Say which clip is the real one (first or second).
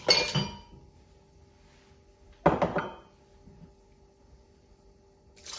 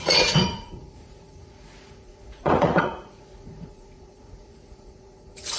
first